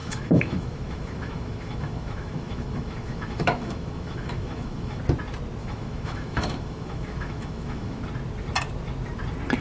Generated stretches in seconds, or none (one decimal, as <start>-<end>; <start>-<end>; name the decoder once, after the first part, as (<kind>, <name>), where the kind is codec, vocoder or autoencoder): 0.0-5.0 (autoencoder, DAC-VAE); 5.6-8.0